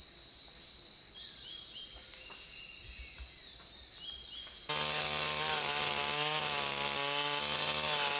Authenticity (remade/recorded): recorded